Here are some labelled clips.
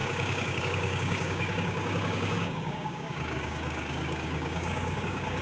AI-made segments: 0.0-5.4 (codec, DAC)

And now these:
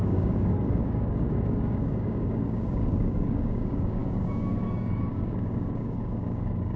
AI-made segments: 0.0-6.8 (codec, DAC)

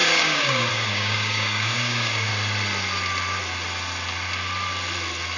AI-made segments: 0.0-2.3 (codec, DAC)

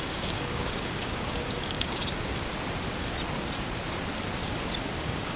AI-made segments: 0.0-2.0 (codec, DAC); 5.0-5.4